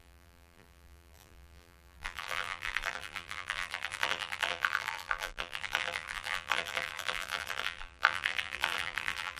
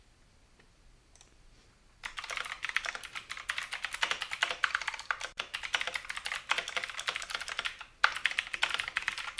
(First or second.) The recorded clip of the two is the second